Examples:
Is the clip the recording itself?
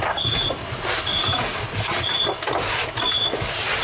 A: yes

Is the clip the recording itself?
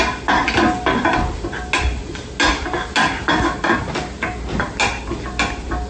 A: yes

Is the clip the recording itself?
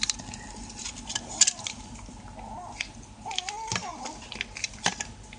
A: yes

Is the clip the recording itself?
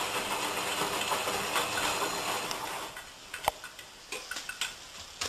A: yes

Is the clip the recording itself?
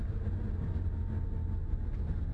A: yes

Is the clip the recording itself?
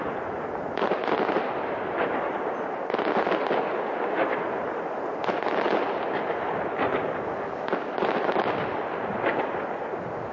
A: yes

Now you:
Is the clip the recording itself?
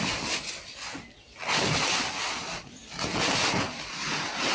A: yes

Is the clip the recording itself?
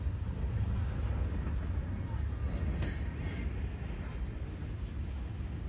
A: yes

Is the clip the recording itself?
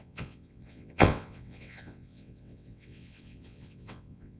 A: no